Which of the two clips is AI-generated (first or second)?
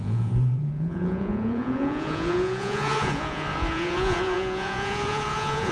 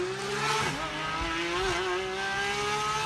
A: first